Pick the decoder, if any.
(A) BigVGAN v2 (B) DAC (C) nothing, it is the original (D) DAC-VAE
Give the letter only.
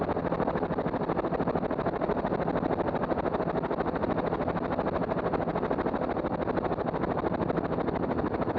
C